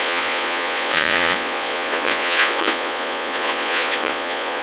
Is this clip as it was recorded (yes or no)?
no